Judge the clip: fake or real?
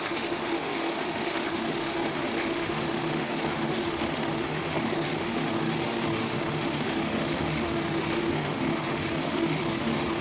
fake